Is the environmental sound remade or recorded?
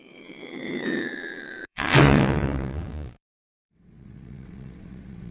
remade